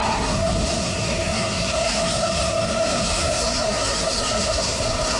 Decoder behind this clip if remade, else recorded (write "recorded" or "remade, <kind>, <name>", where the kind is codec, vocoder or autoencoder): remade, codec, SNAC